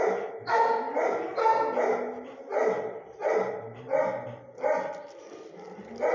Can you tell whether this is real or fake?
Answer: real